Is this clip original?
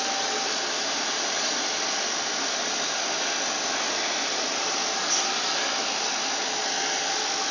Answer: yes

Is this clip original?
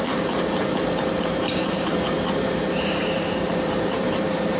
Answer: no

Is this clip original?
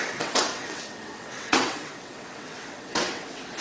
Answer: no